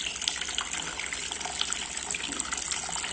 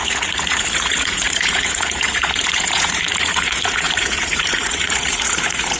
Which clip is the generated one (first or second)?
second